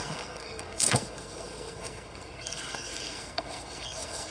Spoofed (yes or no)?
yes